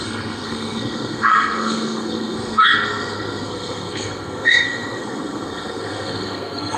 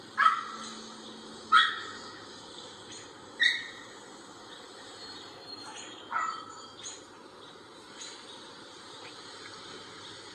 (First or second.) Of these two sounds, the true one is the second